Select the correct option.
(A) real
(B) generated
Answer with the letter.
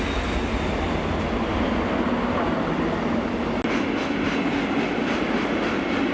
A